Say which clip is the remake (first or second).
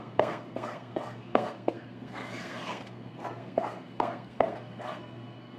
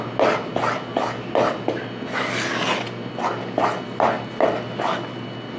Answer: first